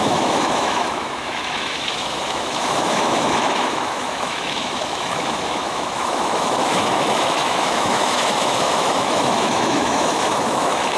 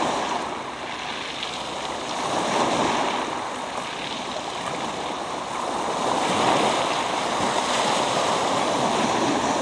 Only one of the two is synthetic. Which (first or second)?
first